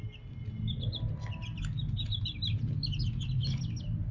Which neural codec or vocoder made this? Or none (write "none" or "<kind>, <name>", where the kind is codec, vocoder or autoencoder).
none